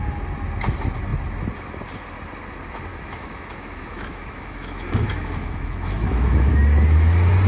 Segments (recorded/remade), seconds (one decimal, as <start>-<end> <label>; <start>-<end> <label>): 0.0-2.9 recorded; 2.9-6.5 remade; 6.5-7.5 recorded